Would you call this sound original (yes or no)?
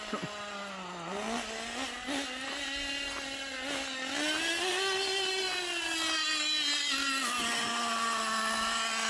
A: yes